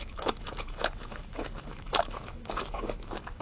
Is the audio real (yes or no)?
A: no